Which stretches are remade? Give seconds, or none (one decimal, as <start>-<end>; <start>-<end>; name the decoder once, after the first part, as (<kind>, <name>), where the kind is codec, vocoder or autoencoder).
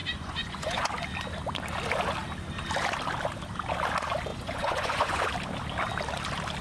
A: 0.0-0.9 (vocoder, Vocos); 4.3-5.3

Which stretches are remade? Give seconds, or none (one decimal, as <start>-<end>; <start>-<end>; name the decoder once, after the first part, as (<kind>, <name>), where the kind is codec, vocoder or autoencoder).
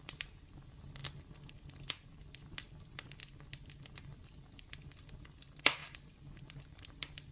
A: none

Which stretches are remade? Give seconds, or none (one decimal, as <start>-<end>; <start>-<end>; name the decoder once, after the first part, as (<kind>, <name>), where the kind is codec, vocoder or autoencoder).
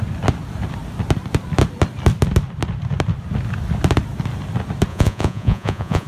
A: 4.9-6.1 (vocoder, Vocos)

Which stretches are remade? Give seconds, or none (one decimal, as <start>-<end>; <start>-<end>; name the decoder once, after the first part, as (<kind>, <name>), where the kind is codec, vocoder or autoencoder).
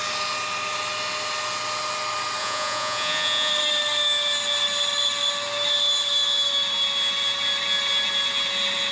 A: 2.4-3.5 (vocoder, Vocos)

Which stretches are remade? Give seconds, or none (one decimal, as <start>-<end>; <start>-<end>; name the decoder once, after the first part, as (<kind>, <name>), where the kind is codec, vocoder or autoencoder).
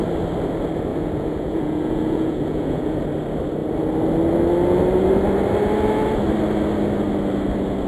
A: 0.9-3.0 (vocoder, Vocos)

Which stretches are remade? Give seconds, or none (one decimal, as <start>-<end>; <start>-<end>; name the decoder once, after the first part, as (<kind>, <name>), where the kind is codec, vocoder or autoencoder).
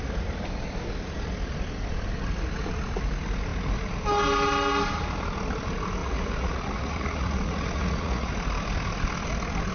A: 6.0-8.3 (vocoder, Vocos)